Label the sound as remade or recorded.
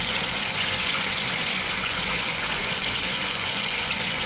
remade